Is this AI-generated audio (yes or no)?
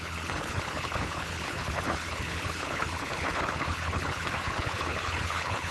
yes